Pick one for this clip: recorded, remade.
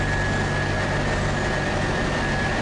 recorded